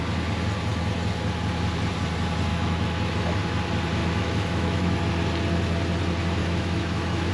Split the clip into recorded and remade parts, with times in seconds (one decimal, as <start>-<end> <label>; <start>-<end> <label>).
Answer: 0.0-2.5 recorded; 2.5-3.1 remade; 3.1-4.0 recorded; 4.0-5.0 remade; 5.0-6.4 recorded; 6.4-7.3 remade